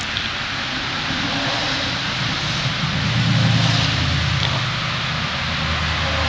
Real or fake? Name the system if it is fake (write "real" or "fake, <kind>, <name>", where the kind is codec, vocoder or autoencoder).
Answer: real